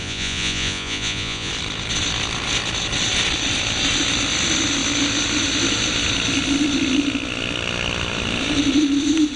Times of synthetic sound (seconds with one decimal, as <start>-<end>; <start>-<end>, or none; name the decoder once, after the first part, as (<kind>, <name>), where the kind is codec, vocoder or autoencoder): 0.0-1.5 (vocoder, Vocos)